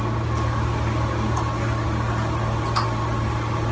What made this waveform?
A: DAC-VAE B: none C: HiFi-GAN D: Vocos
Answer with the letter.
B